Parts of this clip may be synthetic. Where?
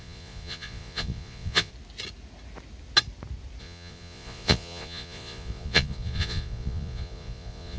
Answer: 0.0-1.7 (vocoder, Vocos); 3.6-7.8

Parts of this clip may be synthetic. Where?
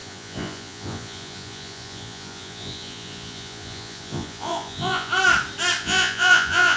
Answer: 0.0-5.1 (vocoder, Vocos); 5.8-6.8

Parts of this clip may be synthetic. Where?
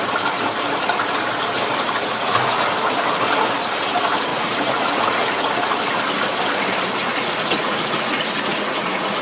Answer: 2.1-2.6 (vocoder, Vocos); 4.3-5.7; 7.1-9.2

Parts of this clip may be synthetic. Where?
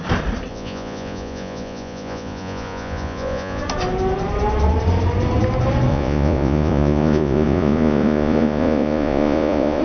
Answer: 0.5-3.6 (vocoder, Vocos); 5.9-9.8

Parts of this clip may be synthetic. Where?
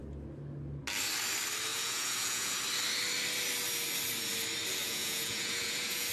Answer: 1.7-2.6 (vocoder, Vocos); 4.8-6.1